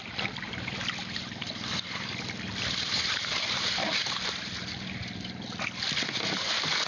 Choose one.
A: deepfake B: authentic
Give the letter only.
A